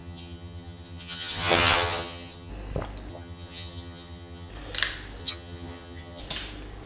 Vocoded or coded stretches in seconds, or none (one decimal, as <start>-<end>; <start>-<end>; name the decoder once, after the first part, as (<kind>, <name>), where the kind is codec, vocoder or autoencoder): 0.0-2.5 (vocoder, HiFi-GAN); 3.1-4.5; 5.2-6.2